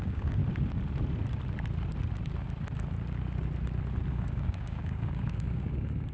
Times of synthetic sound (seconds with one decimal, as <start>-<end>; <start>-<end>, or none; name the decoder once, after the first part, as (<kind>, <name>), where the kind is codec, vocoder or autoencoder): 0.0-0.4 (codec, DAC); 4.1-6.1